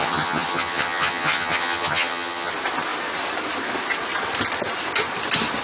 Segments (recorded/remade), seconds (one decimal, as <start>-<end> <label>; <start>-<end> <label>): 0.0-2.5 remade; 2.5-5.6 recorded